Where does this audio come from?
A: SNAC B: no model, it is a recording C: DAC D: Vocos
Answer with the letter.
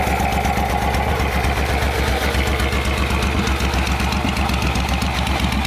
B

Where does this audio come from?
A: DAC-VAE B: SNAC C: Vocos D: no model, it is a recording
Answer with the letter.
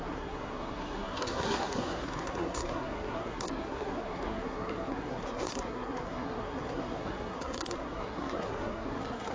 B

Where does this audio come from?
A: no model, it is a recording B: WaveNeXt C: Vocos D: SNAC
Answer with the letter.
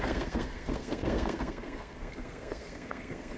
D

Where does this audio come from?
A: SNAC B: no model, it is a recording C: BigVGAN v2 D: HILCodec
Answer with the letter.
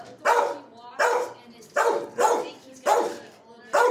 B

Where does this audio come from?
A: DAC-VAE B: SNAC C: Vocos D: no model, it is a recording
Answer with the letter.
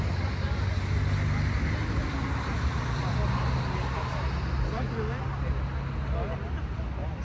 D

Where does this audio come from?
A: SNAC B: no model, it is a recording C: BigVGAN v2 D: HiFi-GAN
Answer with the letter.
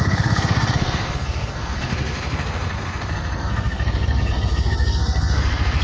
A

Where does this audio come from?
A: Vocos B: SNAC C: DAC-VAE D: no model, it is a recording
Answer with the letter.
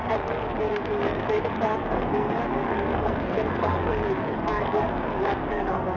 B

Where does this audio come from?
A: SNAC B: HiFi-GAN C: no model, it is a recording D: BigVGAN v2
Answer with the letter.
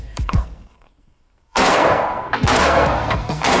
A